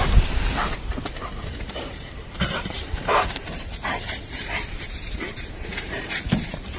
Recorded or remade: remade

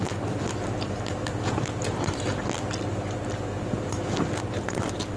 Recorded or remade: recorded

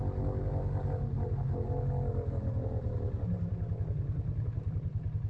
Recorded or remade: recorded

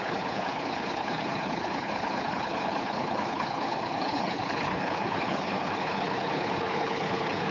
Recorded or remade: remade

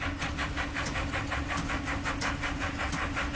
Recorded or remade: recorded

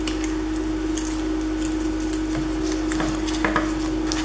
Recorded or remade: recorded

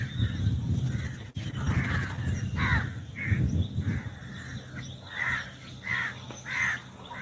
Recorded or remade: recorded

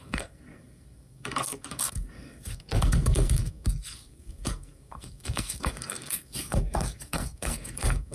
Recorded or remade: remade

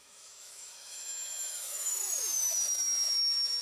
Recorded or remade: remade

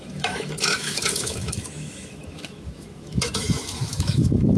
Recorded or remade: remade